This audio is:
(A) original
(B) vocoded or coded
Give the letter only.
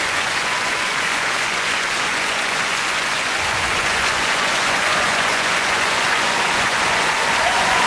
B